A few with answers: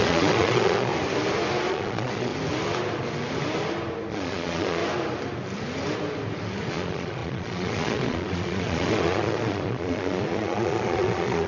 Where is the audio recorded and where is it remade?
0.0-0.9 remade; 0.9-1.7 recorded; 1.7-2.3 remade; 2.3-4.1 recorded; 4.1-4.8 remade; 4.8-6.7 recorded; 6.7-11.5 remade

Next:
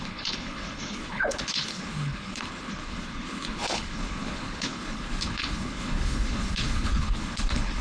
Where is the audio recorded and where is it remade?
0.0-7.8 remade